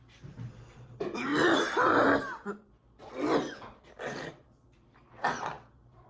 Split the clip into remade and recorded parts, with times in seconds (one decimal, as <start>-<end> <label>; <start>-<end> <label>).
0.0-6.1 remade